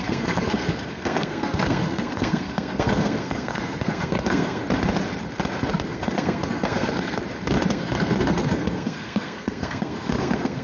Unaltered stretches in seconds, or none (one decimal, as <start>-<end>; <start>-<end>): 4.6-5.7; 7.2-7.7